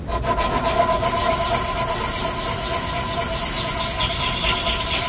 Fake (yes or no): no